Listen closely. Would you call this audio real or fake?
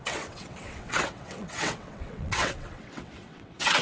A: fake